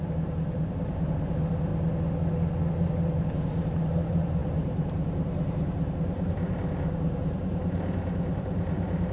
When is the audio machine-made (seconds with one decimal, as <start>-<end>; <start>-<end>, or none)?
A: 0.0-1.7; 3.2-9.1